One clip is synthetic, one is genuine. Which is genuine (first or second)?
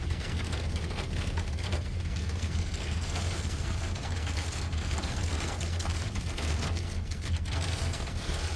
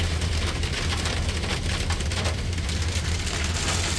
second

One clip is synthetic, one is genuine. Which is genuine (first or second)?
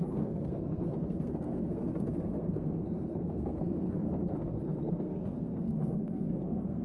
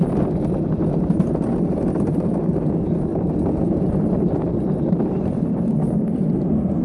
second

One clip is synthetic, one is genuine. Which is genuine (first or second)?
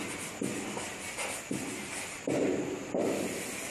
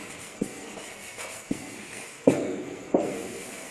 first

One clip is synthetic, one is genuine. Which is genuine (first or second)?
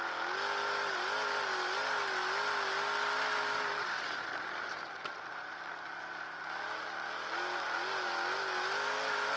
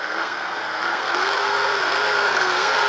first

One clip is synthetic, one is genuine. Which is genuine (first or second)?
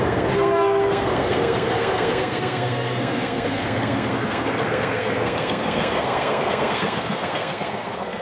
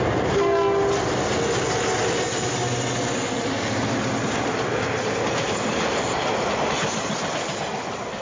second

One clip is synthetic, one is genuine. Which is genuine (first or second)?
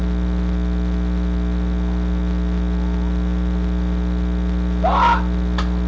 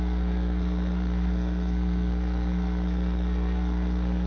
first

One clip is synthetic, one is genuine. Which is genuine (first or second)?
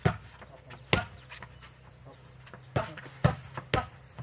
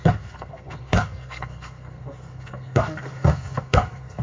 first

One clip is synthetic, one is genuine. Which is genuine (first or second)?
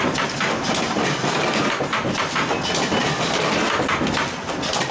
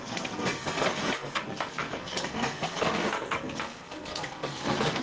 first